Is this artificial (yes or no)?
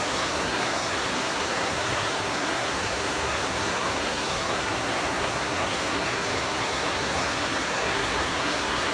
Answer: yes